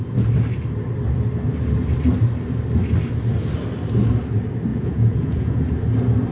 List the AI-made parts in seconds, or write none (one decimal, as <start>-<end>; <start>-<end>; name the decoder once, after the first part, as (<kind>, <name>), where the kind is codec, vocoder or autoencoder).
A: 4.7-5.6 (vocoder, Vocos)